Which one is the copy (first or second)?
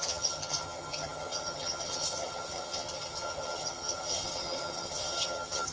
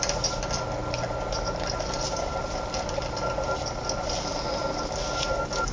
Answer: first